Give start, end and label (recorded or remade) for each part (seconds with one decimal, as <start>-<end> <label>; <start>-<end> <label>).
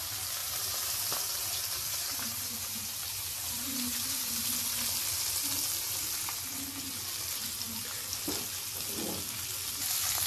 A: 0.0-0.4 recorded; 0.4-4.4 remade; 4.4-10.3 recorded